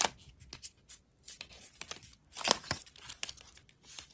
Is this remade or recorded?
recorded